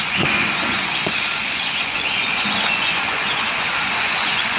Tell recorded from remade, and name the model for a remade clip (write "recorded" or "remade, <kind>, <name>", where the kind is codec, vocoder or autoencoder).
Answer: remade, vocoder, Vocos